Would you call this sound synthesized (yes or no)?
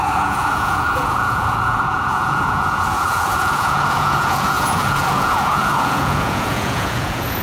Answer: yes